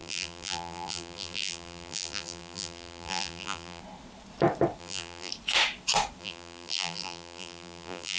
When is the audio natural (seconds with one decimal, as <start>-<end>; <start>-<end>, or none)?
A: 3.8-4.8; 5.3-6.2